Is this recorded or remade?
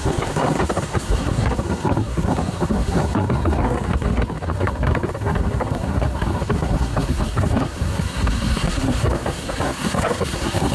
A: remade